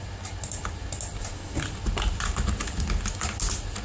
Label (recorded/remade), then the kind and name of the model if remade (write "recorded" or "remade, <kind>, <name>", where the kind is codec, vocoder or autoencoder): recorded